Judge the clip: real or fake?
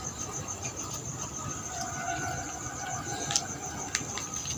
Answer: real